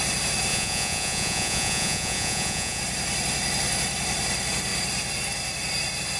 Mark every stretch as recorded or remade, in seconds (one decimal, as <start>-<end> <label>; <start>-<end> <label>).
0.0-0.5 recorded; 0.5-2.8 remade; 2.8-6.2 recorded